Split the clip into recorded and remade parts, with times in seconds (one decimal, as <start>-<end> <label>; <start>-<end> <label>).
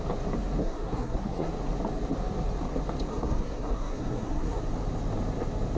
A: 0.0-0.6 recorded; 0.6-1.5 remade; 1.5-3.1 recorded; 3.1-4.6 remade; 4.6-5.8 recorded